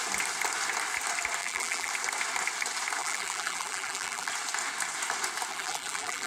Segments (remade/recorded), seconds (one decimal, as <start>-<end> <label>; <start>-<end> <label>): 0.0-1.4 recorded; 1.4-1.9 remade; 1.9-3.0 recorded; 3.0-4.3 remade; 4.3-5.5 recorded; 5.5-6.3 remade